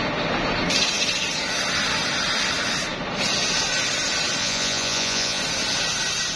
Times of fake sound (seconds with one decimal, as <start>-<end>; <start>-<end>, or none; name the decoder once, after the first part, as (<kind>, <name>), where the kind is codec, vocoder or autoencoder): 4.4-5.4 (vocoder, Vocos)